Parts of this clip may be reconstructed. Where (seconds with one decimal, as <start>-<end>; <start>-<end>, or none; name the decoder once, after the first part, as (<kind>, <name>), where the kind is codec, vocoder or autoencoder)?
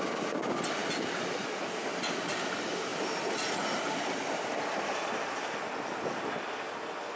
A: none